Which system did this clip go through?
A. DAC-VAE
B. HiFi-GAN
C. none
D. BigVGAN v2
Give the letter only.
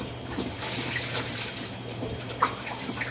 D